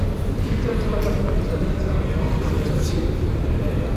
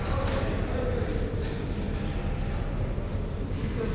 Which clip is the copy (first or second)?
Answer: first